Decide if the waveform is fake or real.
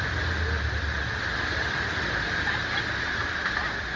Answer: real